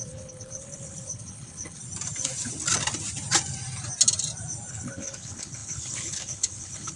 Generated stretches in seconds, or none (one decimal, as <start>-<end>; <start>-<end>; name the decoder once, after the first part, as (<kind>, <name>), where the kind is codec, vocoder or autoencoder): 0.0-1.8 (codec, HILCodec); 4.7-7.0